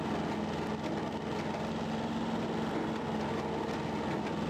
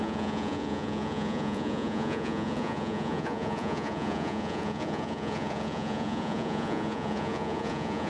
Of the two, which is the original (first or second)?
first